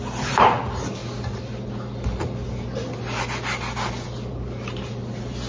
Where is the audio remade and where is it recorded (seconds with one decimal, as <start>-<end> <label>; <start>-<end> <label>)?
0.0-5.5 recorded